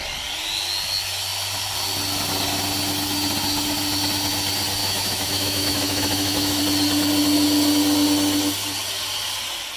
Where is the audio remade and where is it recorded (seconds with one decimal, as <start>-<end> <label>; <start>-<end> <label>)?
0.0-4.8 recorded; 4.8-6.6 remade; 6.6-9.8 recorded